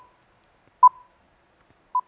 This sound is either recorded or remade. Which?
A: recorded